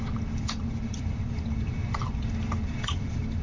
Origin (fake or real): fake